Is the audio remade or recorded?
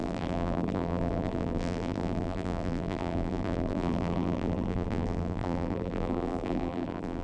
remade